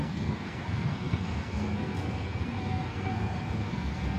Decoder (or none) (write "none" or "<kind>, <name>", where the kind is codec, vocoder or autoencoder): codec, SNAC